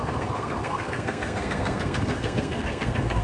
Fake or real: fake